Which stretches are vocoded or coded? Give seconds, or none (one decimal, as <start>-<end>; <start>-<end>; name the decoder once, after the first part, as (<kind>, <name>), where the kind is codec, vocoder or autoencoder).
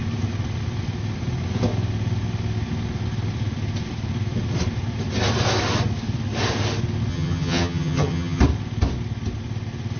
7.1-8.4 (vocoder, HiFi-GAN)